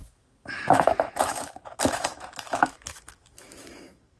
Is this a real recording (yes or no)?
no